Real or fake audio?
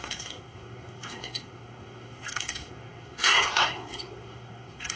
fake